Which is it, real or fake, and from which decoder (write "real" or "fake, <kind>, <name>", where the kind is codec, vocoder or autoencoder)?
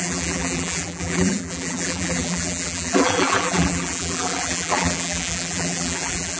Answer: fake, vocoder, BigVGAN v2